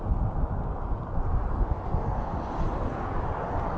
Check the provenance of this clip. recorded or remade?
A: recorded